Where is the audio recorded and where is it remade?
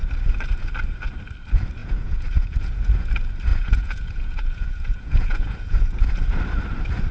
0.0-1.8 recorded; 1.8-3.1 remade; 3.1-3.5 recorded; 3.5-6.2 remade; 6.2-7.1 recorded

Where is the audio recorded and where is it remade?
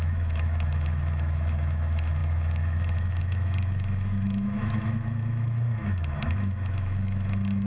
0.0-7.7 remade